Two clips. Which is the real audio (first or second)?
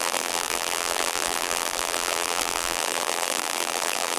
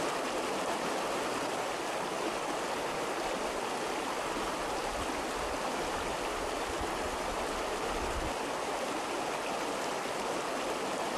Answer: second